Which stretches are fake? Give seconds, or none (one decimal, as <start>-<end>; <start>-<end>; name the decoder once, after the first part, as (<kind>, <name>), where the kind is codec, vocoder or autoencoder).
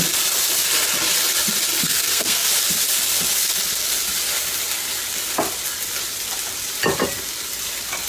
1.8-2.5 (codec, SNAC)